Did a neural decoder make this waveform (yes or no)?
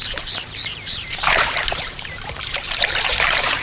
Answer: yes